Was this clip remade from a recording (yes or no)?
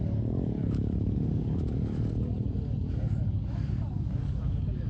yes